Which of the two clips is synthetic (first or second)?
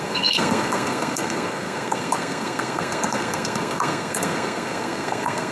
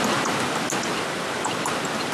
first